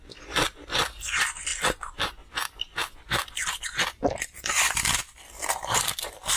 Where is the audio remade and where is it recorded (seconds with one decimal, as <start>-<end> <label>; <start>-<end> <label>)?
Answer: 0.0-1.5 recorded; 1.5-2.1 remade; 2.1-2.8 recorded; 2.8-3.5 remade; 3.5-6.4 recorded